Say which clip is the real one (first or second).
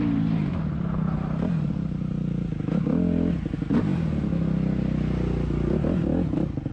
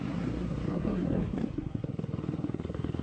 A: first